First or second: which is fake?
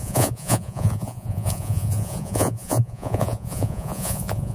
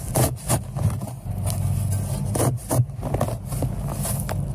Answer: first